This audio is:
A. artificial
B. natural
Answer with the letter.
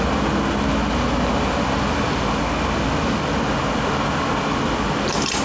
B